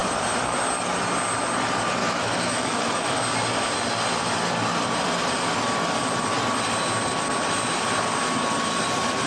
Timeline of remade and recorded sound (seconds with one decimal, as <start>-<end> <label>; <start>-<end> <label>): 0.0-2.0 recorded; 2.0-3.2 remade; 3.2-9.3 recorded